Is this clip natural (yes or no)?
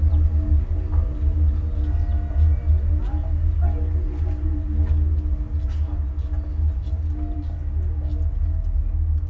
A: yes